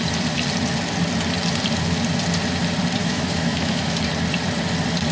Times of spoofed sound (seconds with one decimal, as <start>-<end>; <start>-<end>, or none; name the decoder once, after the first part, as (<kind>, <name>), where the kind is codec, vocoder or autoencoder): 3.0-4.0 (autoencoder, DAC-VAE)